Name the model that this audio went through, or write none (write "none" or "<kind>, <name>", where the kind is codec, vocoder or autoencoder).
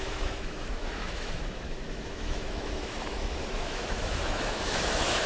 autoencoder, DAC-VAE